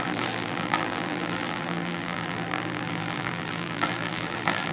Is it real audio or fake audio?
fake